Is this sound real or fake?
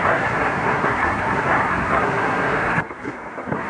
fake